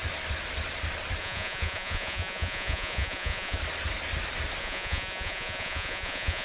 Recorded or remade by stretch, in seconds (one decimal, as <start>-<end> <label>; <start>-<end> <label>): 0.0-1.2 recorded; 1.2-3.6 remade; 3.6-4.6 recorded; 4.6-6.4 remade